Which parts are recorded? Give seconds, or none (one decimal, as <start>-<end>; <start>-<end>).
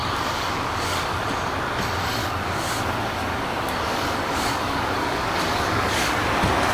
1.2-2.2; 6.2-6.7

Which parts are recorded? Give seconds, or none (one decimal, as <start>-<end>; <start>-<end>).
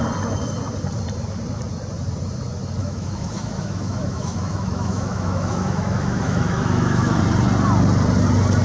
0.0-2.8; 7.2-8.6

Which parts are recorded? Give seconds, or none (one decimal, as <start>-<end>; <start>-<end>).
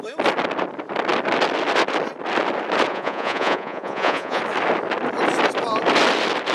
0.0-2.9; 4.4-6.5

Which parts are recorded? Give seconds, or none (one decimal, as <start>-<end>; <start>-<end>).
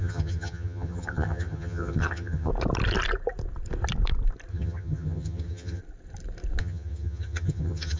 2.5-4.5; 5.8-6.6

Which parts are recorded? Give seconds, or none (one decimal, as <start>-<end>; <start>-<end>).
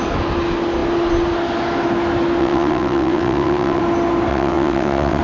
0.0-2.4; 3.8-4.3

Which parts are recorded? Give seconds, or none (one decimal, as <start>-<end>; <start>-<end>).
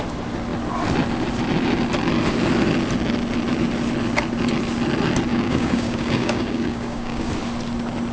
0.0-5.3; 7.3-8.1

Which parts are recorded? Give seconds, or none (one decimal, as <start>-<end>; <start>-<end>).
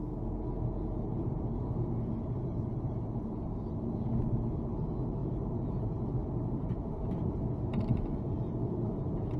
0.0-1.2; 4.0-5.2; 5.8-6.2; 7.0-9.4